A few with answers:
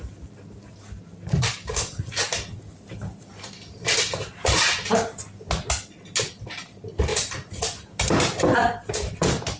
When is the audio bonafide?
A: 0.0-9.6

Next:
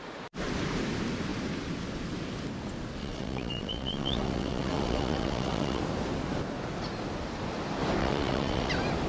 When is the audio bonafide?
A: 0.0-3.0; 5.8-8.0; 8.7-9.1

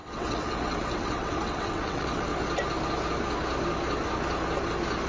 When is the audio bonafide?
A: 2.3-5.1

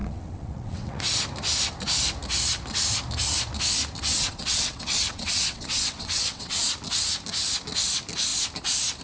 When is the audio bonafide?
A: 1.0-4.1; 6.6-9.0

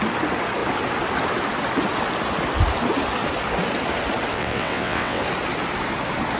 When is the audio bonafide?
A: 0.0-4.3; 5.2-6.4

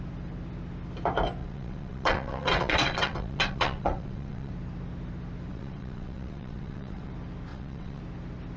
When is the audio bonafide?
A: 0.0-1.4; 4.5-5.5; 7.1-7.5; 8.0-8.6